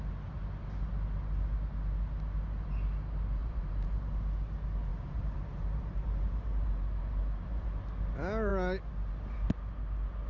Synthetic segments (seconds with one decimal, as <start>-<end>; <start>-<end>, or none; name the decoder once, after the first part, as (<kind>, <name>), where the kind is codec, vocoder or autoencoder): 3.4-4.0 (vocoder, BigVGAN v2); 4.9-7.8